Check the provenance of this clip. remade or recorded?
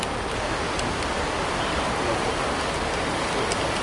recorded